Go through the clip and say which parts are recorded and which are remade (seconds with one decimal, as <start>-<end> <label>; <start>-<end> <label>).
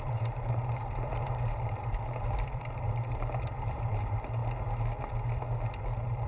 0.0-4.4 remade; 4.4-5.8 recorded; 5.8-6.3 remade